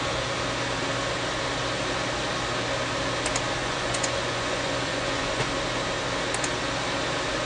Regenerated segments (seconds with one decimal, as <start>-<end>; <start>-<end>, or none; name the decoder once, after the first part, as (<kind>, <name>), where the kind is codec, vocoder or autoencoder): 3.6-5.5 (vocoder, Vocos)